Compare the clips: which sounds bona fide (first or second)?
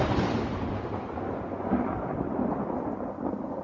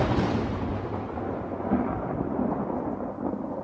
second